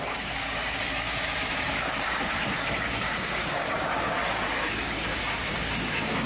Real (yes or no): no